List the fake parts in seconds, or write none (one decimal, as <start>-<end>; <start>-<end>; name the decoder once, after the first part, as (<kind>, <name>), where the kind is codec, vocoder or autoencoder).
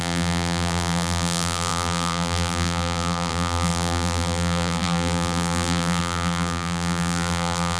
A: 0.0-7.8 (vocoder, BigVGAN v2)